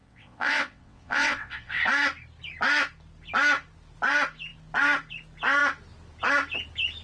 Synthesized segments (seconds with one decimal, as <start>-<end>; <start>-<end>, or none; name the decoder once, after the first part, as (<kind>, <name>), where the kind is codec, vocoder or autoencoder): 0.0-1.8 (vocoder, WaveNeXt)